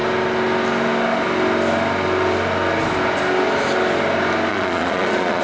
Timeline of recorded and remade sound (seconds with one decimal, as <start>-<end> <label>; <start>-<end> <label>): 0.0-4.5 recorded; 4.5-5.4 remade